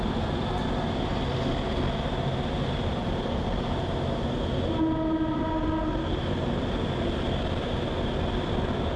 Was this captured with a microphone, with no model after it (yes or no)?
yes